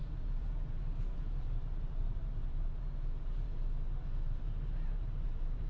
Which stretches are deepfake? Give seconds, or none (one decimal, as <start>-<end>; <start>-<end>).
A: 0.0-5.7

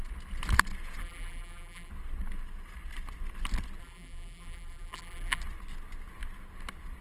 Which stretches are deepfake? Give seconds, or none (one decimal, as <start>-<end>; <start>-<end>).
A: 1.0-1.9; 3.8-5.4

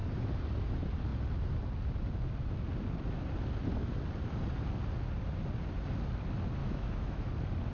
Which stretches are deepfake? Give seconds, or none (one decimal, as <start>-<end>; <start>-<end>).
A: 6.6-7.3

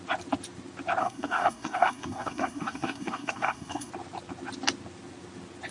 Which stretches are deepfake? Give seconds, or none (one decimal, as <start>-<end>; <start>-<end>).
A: 1.0-3.9